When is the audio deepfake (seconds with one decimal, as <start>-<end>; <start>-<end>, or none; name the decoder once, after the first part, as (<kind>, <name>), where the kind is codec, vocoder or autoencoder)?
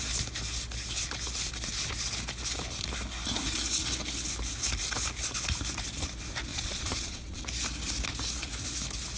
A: 6.5-7.4 (vocoder, Vocos)